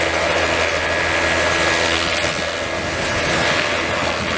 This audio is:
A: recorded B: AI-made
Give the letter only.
A